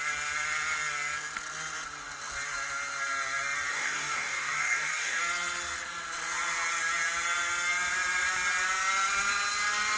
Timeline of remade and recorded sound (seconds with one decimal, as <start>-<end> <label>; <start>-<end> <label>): 0.0-3.7 recorded; 3.7-5.2 remade; 5.2-10.0 recorded